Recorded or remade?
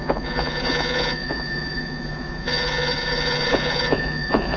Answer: remade